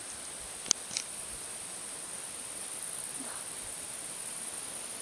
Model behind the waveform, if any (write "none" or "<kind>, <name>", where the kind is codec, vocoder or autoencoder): none